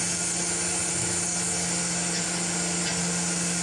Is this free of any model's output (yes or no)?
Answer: yes